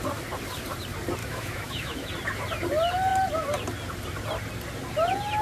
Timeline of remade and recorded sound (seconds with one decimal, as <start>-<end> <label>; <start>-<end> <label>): 0.0-1.2 recorded; 1.2-2.1 remade; 2.1-5.4 recorded